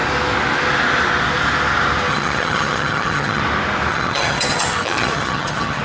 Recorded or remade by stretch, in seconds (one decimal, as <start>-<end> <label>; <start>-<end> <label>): 0.0-2.1 recorded; 2.1-3.4 remade; 3.4-3.9 recorded; 3.9-5.8 remade